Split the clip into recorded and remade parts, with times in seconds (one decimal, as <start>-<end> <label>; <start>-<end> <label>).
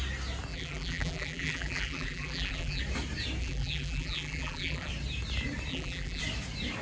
0.0-0.5 recorded; 0.5-2.8 remade; 2.8-3.4 recorded; 3.4-4.9 remade; 4.9-5.7 recorded; 5.7-6.2 remade; 6.2-6.8 recorded